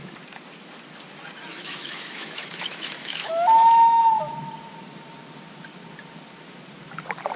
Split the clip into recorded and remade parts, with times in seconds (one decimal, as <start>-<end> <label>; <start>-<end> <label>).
0.0-1.5 recorded; 1.5-4.0 remade; 4.0-7.4 recorded